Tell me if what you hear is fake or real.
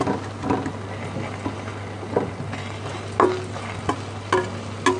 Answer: real